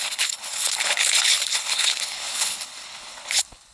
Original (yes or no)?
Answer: no